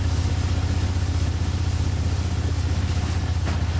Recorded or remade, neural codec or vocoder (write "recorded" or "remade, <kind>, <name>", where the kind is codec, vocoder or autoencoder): recorded